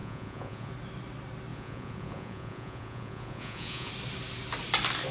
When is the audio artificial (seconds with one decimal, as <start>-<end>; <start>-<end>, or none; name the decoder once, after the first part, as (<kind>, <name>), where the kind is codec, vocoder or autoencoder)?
0.0-0.7 (vocoder, Vocos); 1.5-3.9